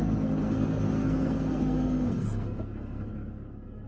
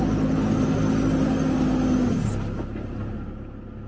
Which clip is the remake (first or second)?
first